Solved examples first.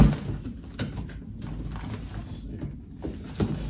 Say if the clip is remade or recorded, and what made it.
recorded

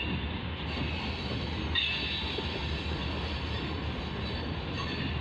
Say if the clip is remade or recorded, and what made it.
recorded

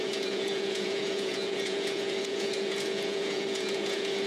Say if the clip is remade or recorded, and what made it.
remade, vocoder, Vocos